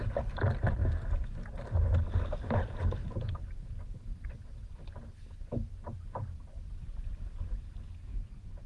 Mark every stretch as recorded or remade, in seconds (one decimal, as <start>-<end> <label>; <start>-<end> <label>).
0.0-8.1 recorded; 8.1-8.7 remade

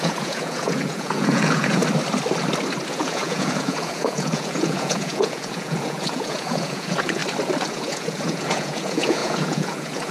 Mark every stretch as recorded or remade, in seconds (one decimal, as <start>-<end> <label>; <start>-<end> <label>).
0.0-1.8 remade; 1.8-2.9 recorded; 2.9-7.2 remade; 7.2-7.7 recorded; 7.7-10.1 remade

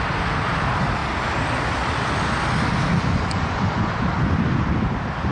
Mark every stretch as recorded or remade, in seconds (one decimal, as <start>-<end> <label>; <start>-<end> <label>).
0.0-2.9 recorded; 2.9-4.0 remade; 4.0-5.3 recorded

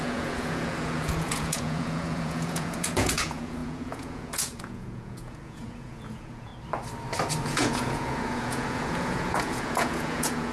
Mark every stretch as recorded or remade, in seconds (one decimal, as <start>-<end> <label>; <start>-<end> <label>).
0.0-6.5 remade; 6.5-7.4 recorded; 7.4-10.5 remade